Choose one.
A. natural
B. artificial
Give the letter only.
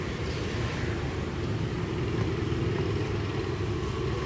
A